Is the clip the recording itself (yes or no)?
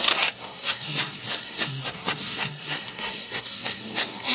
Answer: no